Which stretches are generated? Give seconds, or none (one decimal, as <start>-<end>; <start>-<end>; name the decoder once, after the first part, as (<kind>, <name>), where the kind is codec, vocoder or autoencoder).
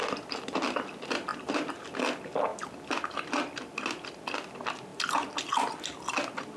1.3-1.9 (vocoder, BigVGAN v2)